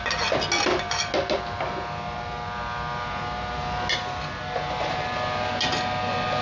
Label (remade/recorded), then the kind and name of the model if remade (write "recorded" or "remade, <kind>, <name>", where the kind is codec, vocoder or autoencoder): recorded